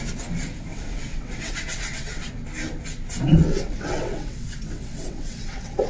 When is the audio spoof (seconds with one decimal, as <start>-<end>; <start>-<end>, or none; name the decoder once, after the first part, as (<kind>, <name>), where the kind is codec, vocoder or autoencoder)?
0.7-2.3 (vocoder, WaveNeXt); 3.3-5.9